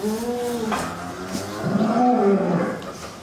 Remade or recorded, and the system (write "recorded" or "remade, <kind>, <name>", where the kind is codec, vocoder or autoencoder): recorded